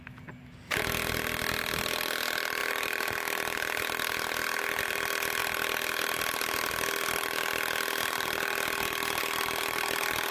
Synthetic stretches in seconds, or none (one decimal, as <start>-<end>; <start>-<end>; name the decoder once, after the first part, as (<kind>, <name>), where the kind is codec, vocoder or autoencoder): none